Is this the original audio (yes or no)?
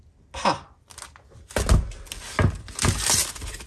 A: yes